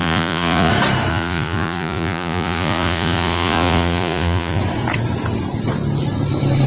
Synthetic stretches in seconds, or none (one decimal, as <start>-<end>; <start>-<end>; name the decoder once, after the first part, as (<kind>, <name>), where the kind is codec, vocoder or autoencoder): 0.0-0.7 (vocoder, Vocos); 1.1-4.6